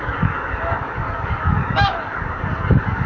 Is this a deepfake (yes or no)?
yes